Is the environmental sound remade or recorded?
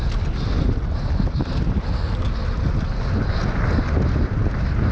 recorded